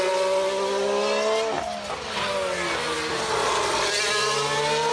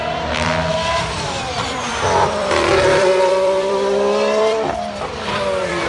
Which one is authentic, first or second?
first